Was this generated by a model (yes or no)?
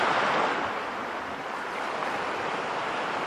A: no